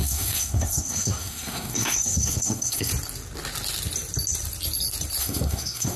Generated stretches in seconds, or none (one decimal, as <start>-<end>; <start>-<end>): 0.0-2.9; 5.2-6.0